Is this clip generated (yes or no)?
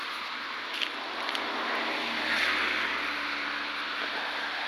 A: no